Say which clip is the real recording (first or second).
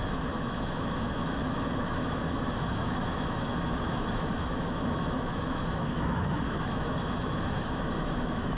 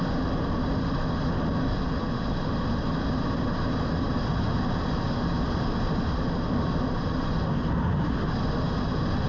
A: second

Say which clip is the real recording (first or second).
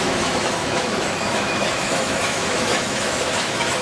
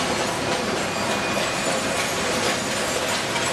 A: second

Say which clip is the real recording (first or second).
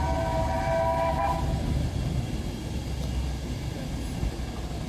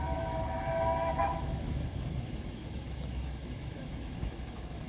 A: first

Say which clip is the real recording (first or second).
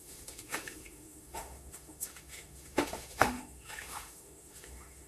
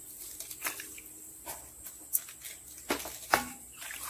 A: second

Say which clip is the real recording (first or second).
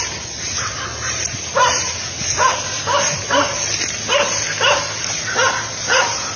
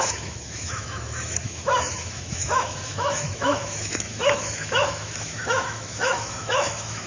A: first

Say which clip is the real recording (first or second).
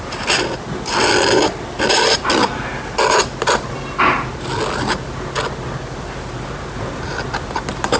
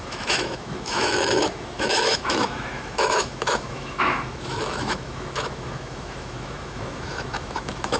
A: first